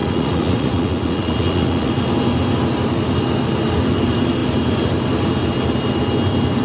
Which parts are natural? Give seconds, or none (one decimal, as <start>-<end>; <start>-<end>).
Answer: 1.9-6.6